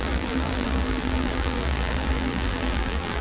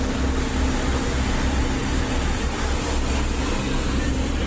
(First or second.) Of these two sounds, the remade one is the first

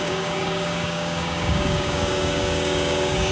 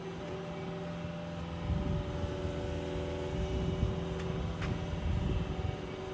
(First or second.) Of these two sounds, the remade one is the first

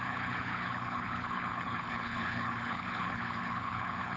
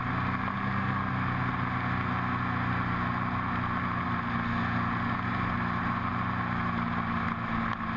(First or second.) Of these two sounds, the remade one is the first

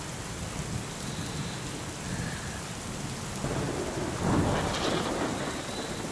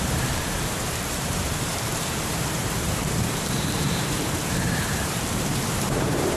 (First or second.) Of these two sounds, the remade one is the second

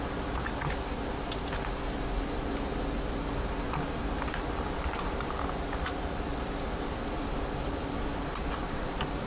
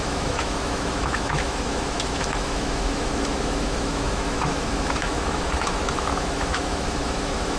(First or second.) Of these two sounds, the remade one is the second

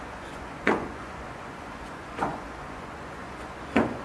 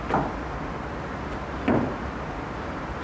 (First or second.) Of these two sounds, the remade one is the first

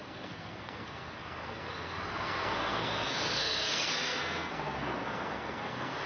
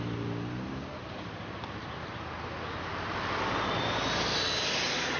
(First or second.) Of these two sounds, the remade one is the first